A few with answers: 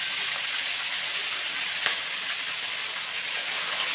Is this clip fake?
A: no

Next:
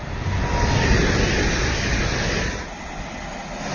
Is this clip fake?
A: no